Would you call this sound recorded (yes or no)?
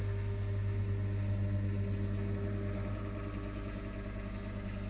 yes